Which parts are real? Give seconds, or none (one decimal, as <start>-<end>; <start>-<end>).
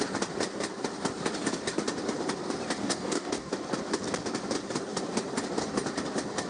0.0-2.8; 3.5-6.5